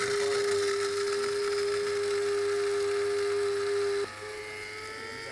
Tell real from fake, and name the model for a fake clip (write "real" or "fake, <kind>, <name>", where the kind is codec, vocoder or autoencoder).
real